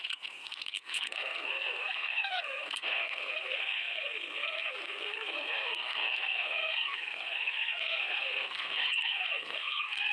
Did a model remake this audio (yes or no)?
yes